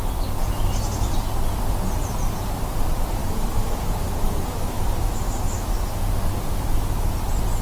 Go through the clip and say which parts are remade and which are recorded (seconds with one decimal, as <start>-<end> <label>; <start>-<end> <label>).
0.0-3.2 recorded; 3.2-5.9 remade; 5.9-7.6 recorded